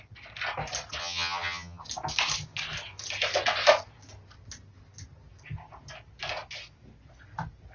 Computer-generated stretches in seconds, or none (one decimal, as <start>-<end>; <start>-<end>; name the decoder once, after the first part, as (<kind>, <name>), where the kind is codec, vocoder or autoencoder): 1.0-1.8 (vocoder, HiFi-GAN)